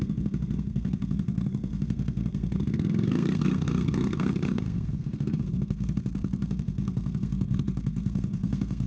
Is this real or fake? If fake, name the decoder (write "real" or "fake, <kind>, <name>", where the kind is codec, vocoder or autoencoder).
fake, codec, SNAC